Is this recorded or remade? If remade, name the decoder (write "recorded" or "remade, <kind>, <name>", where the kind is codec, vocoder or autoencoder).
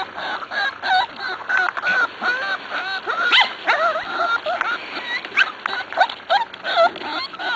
recorded